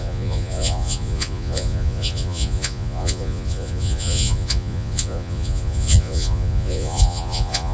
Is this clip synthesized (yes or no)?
yes